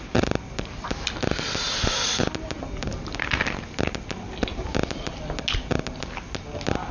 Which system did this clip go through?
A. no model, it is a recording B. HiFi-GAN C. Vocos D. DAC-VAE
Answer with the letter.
A